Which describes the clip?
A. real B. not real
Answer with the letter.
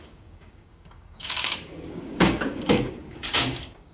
B